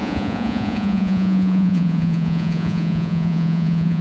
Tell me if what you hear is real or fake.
fake